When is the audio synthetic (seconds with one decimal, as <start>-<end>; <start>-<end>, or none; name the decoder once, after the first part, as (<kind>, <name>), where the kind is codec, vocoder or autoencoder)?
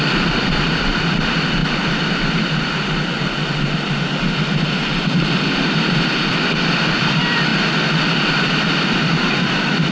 0.0-1.6 (vocoder, BigVGAN v2); 6.3-7.5; 8.3-9.9